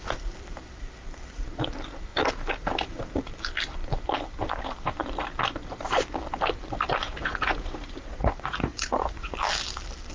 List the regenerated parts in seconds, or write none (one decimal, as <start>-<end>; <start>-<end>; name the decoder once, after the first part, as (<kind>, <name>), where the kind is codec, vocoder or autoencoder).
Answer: 7.0-9.3 (vocoder, Vocos)